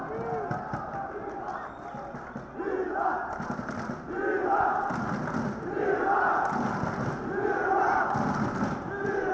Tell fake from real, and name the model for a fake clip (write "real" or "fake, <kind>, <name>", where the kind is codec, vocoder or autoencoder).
real